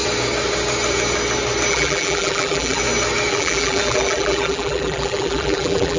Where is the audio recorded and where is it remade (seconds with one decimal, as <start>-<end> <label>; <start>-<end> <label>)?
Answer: 0.0-1.7 recorded; 1.7-2.8 remade; 2.8-3.3 recorded; 3.3-6.0 remade